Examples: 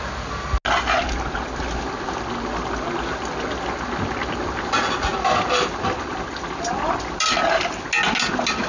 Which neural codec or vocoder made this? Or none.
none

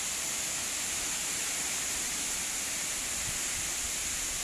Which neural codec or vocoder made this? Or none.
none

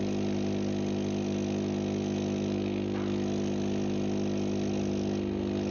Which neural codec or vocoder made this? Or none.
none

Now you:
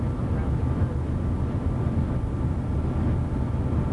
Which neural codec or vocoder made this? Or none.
none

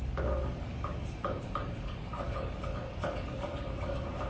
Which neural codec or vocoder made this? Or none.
codec, DAC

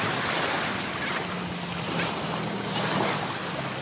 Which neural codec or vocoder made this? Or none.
none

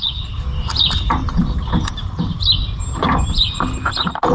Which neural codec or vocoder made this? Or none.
none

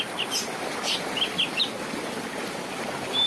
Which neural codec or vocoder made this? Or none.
none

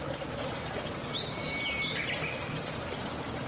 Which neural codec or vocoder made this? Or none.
none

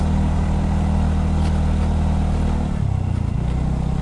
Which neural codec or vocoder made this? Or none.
none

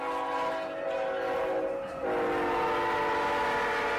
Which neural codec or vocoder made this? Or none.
none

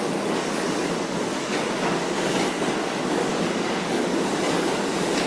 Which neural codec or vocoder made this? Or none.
codec, DAC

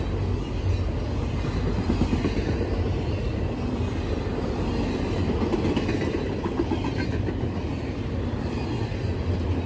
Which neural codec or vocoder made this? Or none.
none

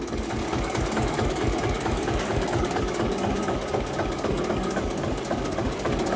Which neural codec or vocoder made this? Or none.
codec, DAC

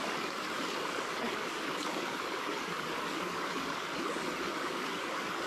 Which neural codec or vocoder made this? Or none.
codec, DAC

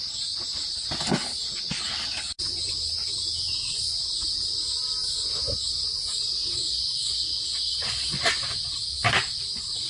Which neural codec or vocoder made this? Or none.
none